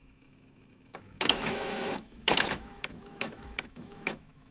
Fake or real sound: fake